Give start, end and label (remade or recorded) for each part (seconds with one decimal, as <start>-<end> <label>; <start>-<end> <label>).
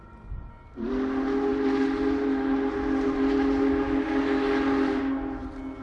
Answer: 0.0-5.8 recorded